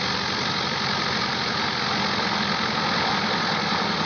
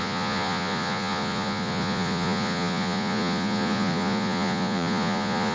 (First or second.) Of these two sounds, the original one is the first